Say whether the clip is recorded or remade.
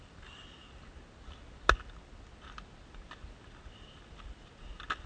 recorded